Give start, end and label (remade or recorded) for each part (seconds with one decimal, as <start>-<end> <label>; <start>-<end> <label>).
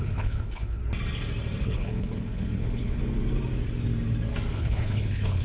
0.0-0.8 remade; 0.8-1.6 recorded; 1.6-3.0 remade; 3.0-4.5 recorded; 4.5-5.4 remade